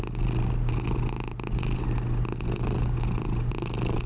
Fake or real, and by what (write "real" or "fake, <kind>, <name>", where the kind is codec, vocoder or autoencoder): real